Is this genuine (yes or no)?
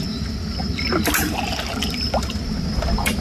yes